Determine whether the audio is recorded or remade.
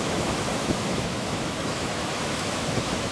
remade